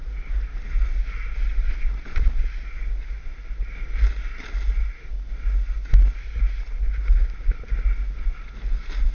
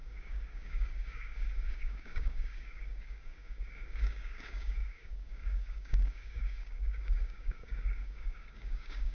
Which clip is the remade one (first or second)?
second